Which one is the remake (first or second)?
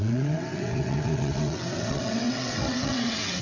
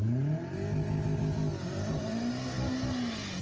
first